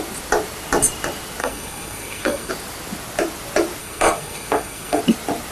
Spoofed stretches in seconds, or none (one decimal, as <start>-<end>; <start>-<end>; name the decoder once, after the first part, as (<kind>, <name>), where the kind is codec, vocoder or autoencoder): 1.4-2.5 (codec, SNAC); 3.8-5.0